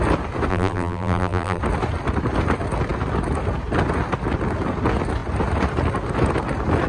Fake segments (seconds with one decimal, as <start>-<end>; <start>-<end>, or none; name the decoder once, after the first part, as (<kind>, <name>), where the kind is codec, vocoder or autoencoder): 0.5-1.6 (vocoder, BigVGAN v2)